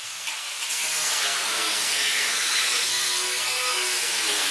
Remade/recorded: remade